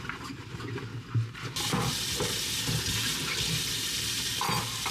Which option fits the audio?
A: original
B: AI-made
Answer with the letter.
A